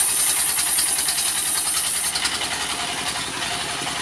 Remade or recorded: recorded